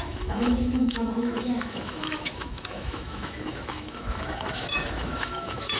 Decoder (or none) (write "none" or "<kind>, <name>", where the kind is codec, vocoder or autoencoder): autoencoder, DAC-VAE